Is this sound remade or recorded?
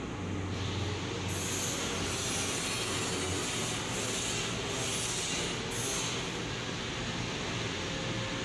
recorded